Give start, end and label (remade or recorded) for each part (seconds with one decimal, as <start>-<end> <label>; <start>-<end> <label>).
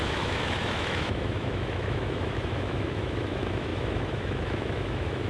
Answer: 0.0-5.3 remade